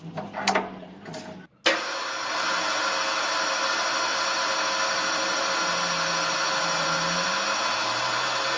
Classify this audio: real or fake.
real